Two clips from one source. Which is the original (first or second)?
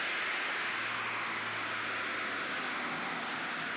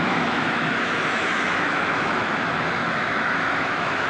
first